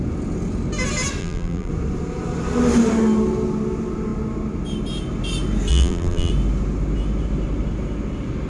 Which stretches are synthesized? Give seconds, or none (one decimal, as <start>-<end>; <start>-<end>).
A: 1.2-1.7; 5.7-6.3

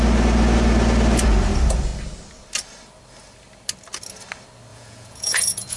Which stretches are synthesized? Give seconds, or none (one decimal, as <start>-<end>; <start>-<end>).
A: 4.7-5.8

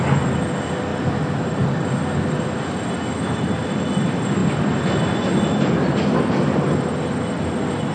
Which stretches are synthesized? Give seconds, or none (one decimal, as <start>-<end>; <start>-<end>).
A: none

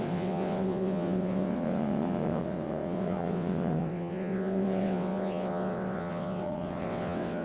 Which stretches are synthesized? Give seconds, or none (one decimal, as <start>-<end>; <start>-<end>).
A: 0.0-7.4

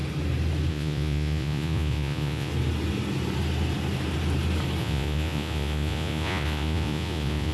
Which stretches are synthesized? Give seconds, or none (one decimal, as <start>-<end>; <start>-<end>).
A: 0.7-2.5; 4.8-7.5

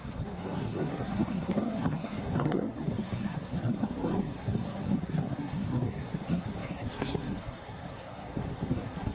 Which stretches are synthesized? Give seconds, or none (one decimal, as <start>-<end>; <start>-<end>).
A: 0.0-9.1

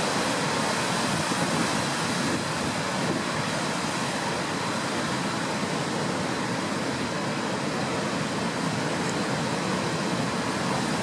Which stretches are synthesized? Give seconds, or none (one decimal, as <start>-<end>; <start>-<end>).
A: 2.9-6.9

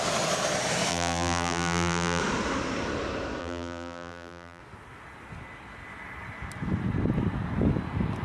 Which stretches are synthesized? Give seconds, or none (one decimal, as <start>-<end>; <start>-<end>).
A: 0.9-2.2; 3.4-4.6